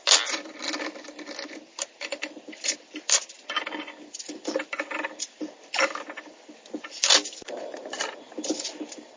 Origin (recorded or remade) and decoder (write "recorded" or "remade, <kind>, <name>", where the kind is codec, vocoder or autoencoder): recorded